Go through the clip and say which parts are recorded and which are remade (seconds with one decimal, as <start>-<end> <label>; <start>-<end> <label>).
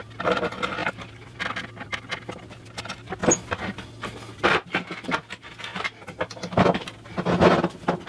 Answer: 0.0-8.1 recorded